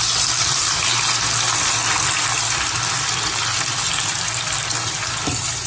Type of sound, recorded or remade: recorded